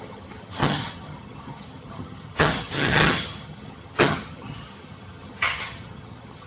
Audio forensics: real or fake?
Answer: fake